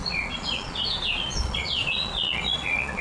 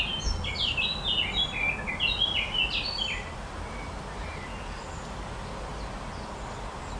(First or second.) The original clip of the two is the second